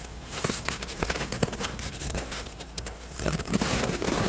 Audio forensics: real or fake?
fake